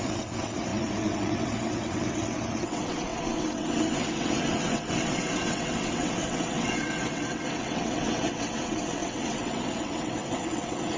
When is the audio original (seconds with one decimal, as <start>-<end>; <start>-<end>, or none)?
none